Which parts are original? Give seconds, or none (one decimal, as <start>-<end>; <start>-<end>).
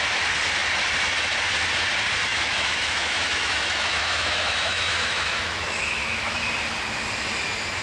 0.0-2.3; 6.5-7.8